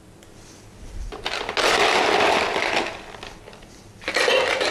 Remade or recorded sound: recorded